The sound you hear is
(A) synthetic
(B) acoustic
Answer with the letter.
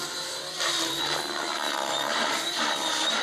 A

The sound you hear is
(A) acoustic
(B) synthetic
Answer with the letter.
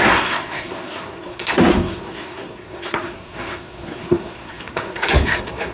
B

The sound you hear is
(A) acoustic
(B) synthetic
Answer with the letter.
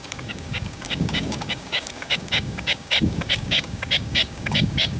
B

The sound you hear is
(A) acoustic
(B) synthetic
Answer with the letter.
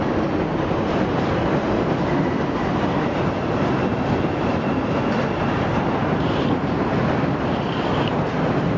A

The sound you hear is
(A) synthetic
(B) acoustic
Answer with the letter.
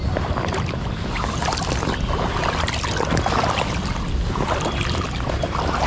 B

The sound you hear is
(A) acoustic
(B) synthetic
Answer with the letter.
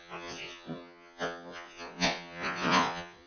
B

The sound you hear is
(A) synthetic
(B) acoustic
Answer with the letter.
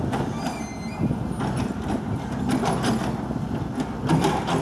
B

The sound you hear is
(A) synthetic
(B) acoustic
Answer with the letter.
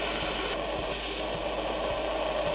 B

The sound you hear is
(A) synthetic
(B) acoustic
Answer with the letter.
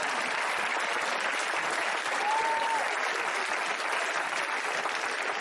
B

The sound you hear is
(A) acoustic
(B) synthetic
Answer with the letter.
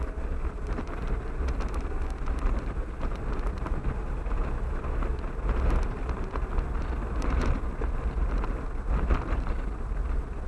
A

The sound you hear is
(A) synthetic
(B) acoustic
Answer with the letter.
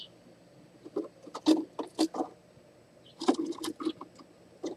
B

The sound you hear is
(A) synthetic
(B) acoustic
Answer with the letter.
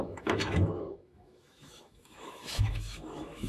A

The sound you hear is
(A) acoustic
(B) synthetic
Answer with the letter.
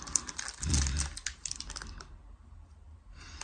A